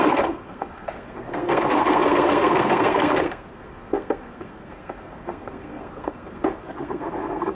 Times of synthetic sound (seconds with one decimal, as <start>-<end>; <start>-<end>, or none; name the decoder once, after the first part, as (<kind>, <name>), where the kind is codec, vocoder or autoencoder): 0.0-7.5 (codec, SNAC)